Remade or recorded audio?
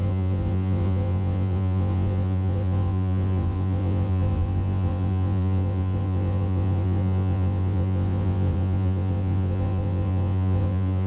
remade